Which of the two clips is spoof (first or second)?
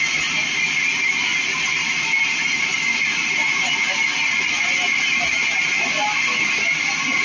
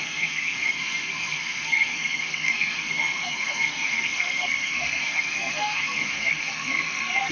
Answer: second